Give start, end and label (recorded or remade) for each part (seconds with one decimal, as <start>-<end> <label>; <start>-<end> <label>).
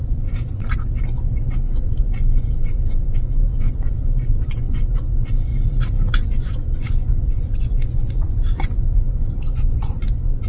0.0-5.5 remade; 5.5-6.1 recorded; 6.1-10.5 remade